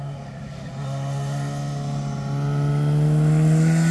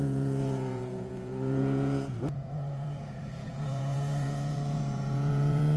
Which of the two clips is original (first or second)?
first